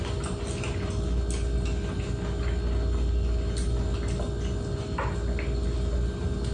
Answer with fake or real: real